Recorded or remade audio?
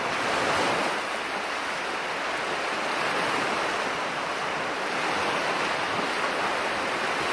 recorded